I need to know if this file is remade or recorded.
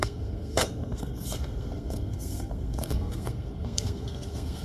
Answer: remade